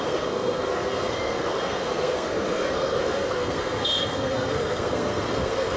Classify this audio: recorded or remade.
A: remade